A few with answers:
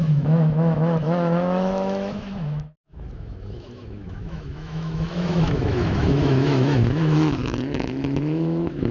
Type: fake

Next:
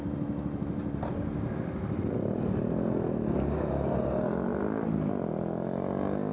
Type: real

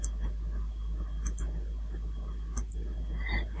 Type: real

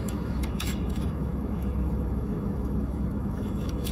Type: fake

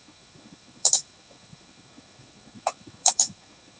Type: fake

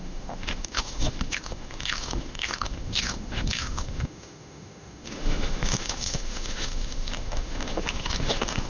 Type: fake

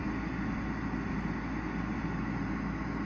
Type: real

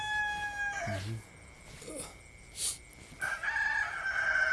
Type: real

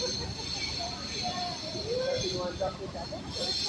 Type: real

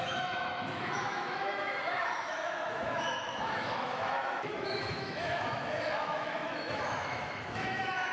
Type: fake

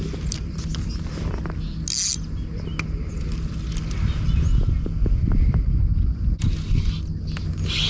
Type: real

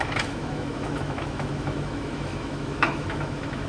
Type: fake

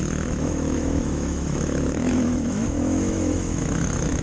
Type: fake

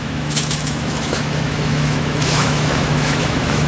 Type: fake